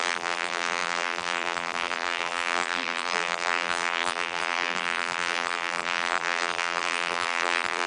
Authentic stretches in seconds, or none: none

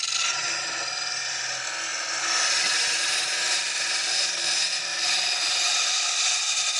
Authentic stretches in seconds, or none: 0.0-6.8

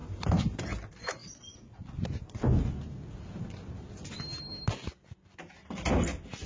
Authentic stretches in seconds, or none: 0.6-6.5

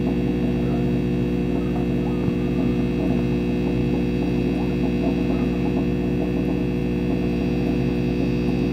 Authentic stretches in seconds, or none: 0.0-1.4; 2.7-3.8; 4.4-8.7